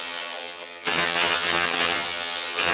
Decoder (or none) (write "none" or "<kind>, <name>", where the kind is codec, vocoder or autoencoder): vocoder, HiFi-GAN